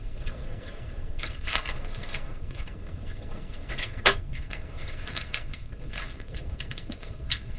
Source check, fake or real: fake